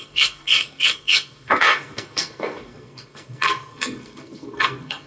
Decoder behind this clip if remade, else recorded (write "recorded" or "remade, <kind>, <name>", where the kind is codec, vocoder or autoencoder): remade, codec, SNAC